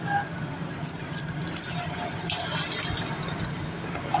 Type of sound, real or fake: real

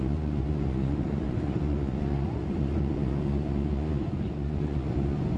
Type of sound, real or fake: fake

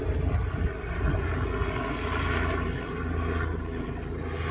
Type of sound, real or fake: real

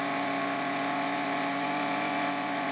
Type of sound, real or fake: fake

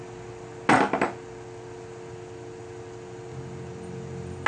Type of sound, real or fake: real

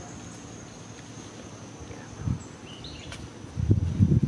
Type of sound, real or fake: real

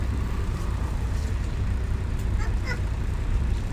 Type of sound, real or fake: fake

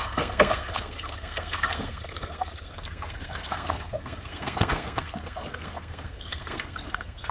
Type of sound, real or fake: fake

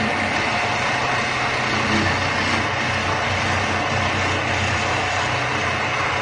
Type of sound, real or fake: real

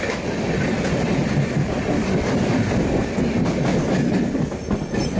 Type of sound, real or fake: real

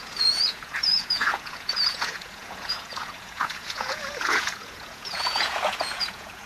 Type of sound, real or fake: fake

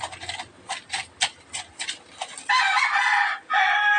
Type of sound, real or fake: real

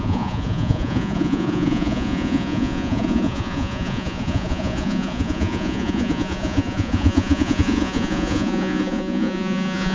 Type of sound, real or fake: fake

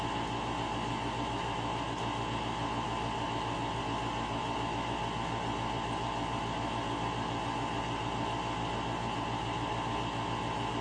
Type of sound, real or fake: real